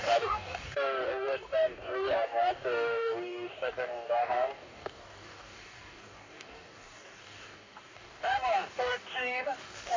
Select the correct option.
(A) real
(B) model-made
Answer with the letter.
B